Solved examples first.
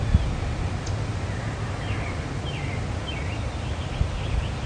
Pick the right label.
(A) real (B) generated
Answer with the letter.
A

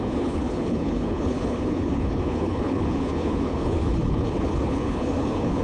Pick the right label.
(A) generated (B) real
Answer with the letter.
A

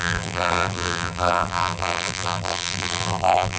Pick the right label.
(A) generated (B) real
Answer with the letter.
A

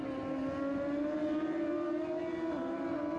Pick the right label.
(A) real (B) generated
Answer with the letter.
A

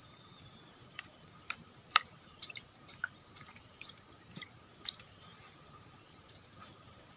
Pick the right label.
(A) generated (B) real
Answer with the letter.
A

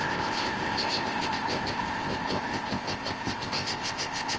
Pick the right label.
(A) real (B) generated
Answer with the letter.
B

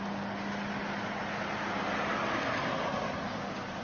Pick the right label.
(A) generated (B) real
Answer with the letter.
B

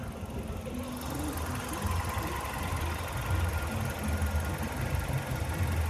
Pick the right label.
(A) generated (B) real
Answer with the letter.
B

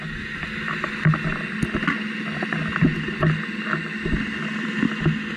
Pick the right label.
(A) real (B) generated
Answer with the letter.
A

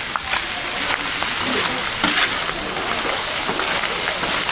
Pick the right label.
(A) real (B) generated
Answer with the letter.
A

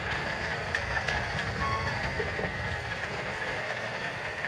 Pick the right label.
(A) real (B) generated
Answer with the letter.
B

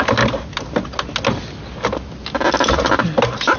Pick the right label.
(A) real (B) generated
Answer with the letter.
A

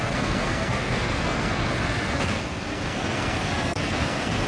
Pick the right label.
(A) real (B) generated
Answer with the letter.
B